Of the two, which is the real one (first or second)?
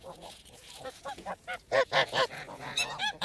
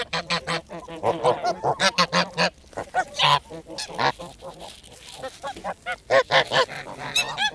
second